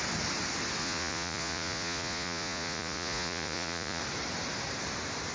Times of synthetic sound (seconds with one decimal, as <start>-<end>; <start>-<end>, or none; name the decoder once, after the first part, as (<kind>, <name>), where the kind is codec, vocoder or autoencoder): 0.8-4.0 (vocoder, Vocos)